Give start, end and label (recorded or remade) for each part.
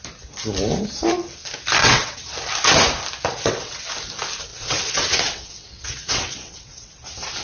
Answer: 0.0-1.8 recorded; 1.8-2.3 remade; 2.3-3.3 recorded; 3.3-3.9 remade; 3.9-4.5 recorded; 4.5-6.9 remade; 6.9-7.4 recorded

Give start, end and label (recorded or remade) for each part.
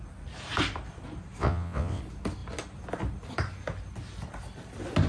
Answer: 0.0-1.4 recorded; 1.4-2.0 remade; 2.0-5.1 recorded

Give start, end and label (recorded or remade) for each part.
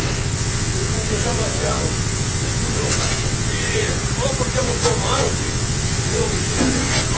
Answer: 0.0-4.0 remade; 4.0-4.6 recorded; 4.6-7.2 remade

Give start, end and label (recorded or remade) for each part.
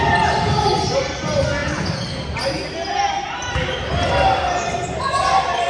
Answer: 0.0-5.7 recorded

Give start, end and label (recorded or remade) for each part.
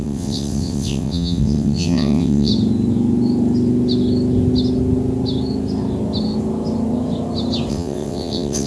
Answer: 0.0-2.5 remade; 2.5-7.7 recorded; 7.7-8.7 remade